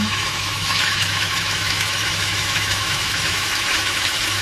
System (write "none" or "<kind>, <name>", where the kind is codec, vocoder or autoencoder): autoencoder, DAC-VAE